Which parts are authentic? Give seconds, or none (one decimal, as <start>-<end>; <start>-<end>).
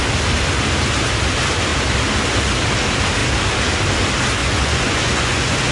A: 0.0-4.4